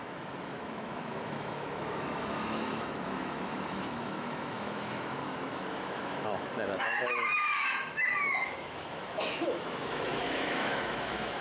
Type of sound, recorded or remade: remade